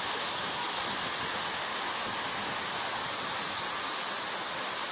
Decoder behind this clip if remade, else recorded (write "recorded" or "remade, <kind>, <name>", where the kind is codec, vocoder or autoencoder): recorded